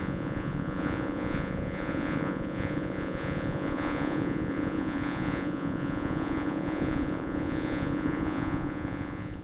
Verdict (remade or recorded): remade